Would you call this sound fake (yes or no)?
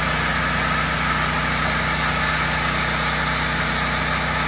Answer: no